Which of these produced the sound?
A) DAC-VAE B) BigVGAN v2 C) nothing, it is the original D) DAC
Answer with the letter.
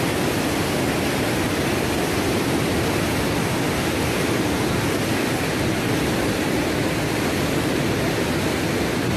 C